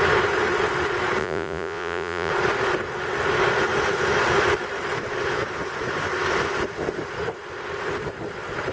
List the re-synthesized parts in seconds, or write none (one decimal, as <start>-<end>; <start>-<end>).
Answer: 1.2-2.3